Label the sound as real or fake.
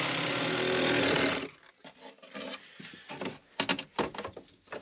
real